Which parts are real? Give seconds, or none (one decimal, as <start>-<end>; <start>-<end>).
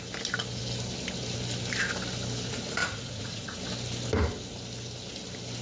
0.0-2.8; 3.6-5.6